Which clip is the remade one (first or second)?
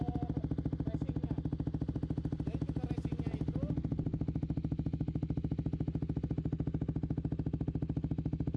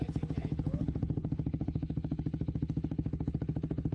second